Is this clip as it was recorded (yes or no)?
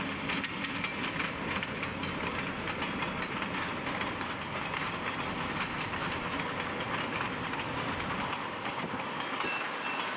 yes